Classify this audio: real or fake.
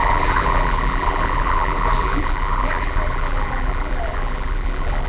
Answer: fake